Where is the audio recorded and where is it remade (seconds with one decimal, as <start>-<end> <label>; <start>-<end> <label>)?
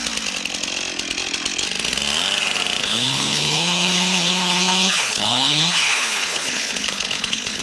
0.0-2.8 recorded; 2.8-7.6 remade